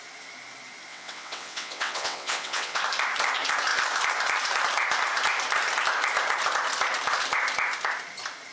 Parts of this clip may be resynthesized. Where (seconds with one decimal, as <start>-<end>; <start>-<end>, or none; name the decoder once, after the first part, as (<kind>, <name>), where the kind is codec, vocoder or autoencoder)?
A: 0.9-2.8 (vocoder, WaveNeXt)